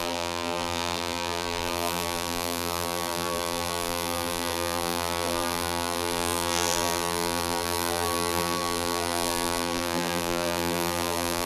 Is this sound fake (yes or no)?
yes